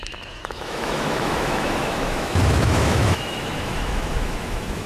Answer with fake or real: fake